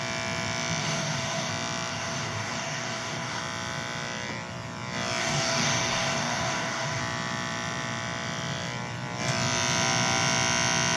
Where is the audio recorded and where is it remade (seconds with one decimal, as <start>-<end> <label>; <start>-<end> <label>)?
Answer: 0.0-0.8 recorded; 0.8-1.5 remade; 1.5-1.9 recorded; 1.9-3.4 remade; 3.4-5.2 recorded; 5.2-7.0 remade; 7.0-11.0 recorded